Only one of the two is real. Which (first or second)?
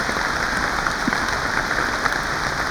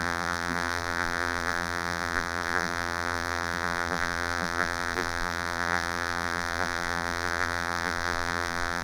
first